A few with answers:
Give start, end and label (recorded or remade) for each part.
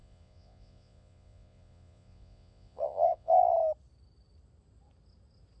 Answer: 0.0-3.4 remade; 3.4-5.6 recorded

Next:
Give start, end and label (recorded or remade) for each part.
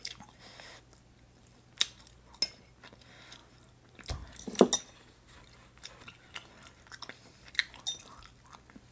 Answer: 0.0-8.9 recorded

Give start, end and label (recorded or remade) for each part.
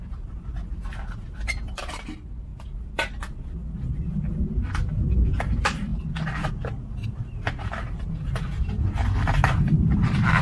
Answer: 0.0-2.5 remade; 2.5-4.9 recorded; 4.9-5.9 remade; 5.9-6.5 recorded; 6.5-10.4 remade